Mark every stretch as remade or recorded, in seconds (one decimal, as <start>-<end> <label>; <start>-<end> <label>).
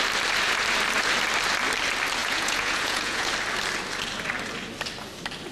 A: 0.0-2.2 recorded; 2.2-3.3 remade; 3.3-5.5 recorded